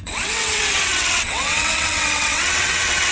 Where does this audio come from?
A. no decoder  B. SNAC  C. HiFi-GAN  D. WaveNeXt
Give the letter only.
D